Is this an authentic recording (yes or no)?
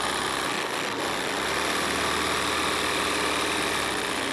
yes